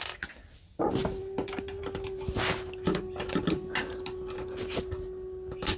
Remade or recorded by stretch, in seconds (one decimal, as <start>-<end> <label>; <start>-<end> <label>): 0.0-5.8 recorded

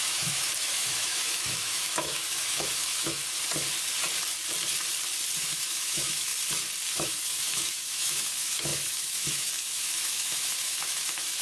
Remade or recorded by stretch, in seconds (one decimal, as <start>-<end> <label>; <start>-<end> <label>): 0.0-3.2 remade; 3.2-5.4 recorded; 5.4-6.3 remade; 6.3-6.9 recorded; 6.9-11.4 remade

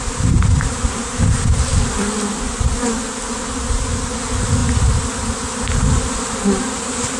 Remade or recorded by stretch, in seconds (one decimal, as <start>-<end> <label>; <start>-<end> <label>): 0.0-7.2 recorded

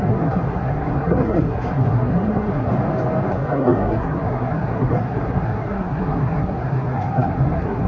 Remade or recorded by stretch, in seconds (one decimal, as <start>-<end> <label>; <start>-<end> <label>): 0.0-2.7 remade; 2.7-3.3 recorded; 3.3-7.9 remade

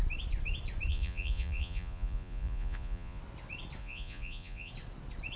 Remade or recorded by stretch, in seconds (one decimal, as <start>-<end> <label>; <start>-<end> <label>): 0.0-0.9 recorded; 0.9-3.2 remade; 3.2-3.8 recorded; 3.8-4.7 remade; 4.7-5.4 recorded